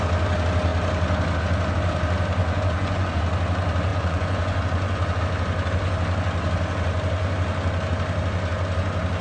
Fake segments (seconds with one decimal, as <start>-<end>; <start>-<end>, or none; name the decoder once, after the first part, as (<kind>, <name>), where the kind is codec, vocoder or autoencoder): 2.4-3.2 (vocoder, Vocos); 3.9-5.2